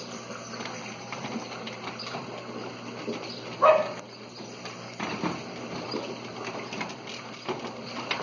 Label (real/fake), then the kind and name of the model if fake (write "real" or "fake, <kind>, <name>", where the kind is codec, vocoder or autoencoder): real